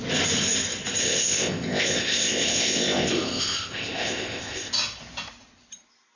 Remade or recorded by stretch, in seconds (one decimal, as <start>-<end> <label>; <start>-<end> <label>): 0.0-1.0 recorded; 1.0-4.7 remade; 4.7-6.2 recorded